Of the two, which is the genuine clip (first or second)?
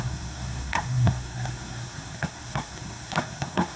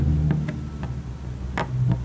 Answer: second